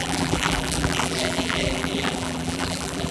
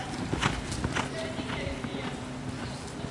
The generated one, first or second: first